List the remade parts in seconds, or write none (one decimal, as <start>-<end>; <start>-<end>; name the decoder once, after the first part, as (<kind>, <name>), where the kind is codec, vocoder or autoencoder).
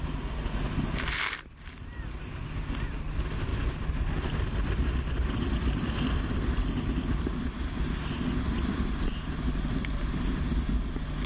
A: none